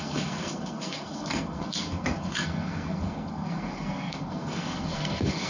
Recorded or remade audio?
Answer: remade